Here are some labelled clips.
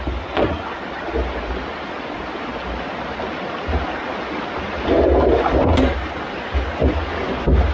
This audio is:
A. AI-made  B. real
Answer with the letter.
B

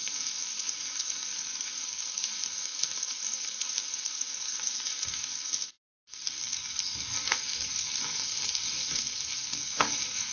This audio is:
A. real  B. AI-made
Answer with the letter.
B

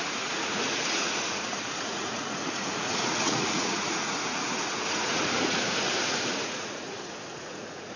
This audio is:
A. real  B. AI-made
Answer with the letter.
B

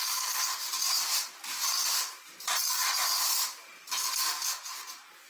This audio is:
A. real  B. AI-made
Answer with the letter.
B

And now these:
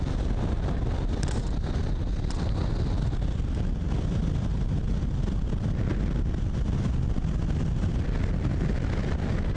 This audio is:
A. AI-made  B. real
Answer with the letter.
B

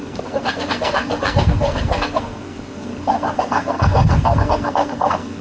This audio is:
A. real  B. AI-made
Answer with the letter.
B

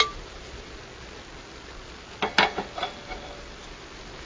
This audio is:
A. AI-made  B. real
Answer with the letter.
B